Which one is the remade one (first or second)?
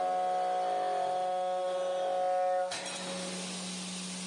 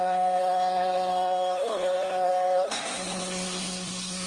second